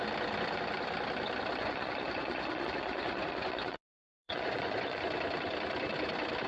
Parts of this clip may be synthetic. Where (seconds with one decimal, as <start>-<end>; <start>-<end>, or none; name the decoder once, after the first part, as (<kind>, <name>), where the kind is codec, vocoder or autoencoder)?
1.6-5.0 (vocoder, Vocos)